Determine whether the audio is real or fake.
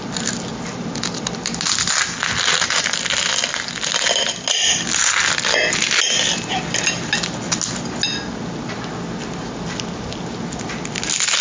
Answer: real